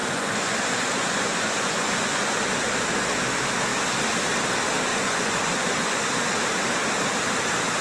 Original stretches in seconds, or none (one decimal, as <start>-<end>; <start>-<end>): 2.4-4.9; 6.0-7.8